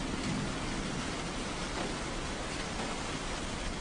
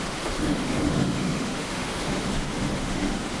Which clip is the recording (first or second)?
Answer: first